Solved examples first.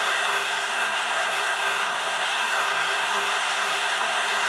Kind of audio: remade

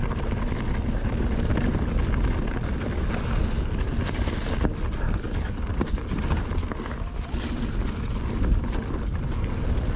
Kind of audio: recorded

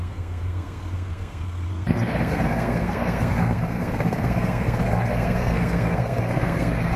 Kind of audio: remade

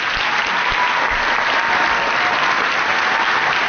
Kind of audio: recorded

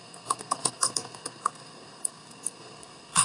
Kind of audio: remade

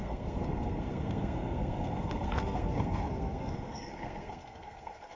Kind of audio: remade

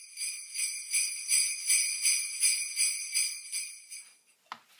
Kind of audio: recorded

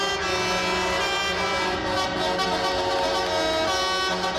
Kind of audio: recorded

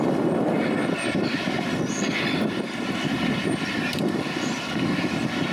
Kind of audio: recorded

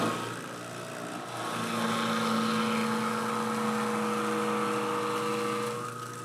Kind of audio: recorded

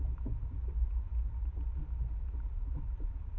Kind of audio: recorded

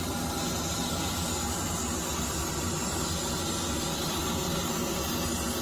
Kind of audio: recorded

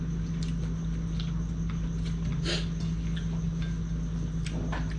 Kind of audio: recorded